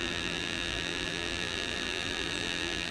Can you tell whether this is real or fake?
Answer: fake